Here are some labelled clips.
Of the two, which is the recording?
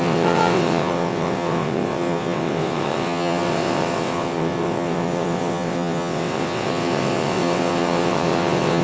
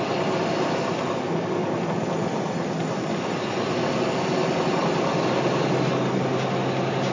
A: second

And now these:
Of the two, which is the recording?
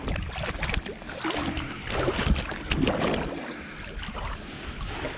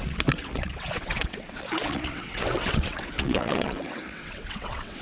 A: first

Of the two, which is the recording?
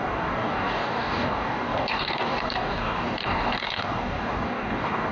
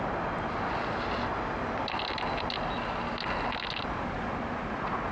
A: second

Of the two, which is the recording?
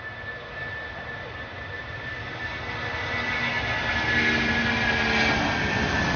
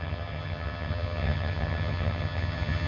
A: first